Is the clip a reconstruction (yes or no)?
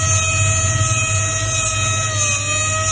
no